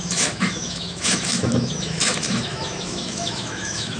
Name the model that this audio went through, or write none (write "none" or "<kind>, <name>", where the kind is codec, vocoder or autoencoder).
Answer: autoencoder, DAC-VAE